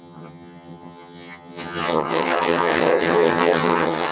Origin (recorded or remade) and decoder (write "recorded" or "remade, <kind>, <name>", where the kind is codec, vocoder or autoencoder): remade, vocoder, HiFi-GAN